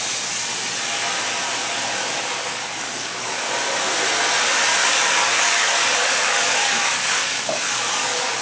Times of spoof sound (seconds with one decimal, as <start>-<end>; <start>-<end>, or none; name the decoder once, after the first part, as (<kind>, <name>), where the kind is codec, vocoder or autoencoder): 1.6-3.5 (codec, DAC); 4.8-8.4